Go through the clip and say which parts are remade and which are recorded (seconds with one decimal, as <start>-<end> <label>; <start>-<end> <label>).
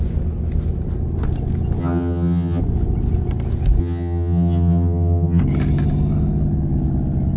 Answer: 0.0-1.8 recorded; 1.8-2.6 remade; 2.6-3.8 recorded; 3.8-5.4 remade; 5.4-7.4 recorded